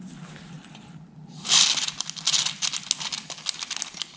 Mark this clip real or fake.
real